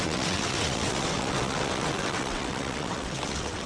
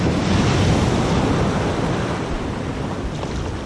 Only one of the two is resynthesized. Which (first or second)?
first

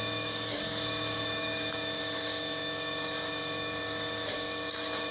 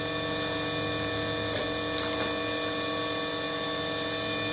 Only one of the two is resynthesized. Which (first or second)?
first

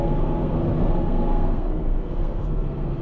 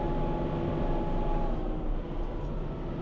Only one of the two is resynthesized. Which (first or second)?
first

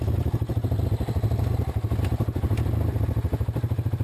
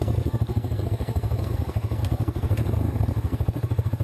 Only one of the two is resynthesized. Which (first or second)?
second